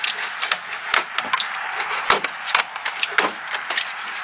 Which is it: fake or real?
real